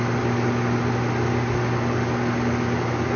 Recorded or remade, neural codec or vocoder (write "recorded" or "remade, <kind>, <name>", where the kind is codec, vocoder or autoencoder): recorded